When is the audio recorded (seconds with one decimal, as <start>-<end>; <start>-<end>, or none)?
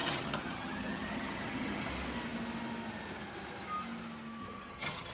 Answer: 1.9-4.4